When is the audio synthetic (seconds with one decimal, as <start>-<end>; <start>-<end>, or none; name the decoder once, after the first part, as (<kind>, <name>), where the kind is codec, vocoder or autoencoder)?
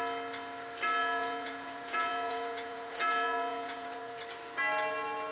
1.0-4.2 (vocoder, Vocos)